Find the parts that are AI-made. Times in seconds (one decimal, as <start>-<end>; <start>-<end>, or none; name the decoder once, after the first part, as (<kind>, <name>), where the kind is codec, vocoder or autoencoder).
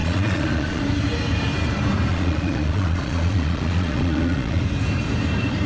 0.0-0.8 (vocoder, Vocos); 2.1-4.6